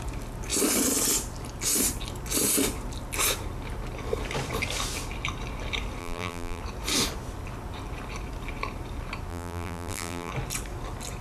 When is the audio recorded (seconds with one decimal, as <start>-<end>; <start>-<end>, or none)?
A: 0.0-6.0; 6.6-9.3; 10.3-11.2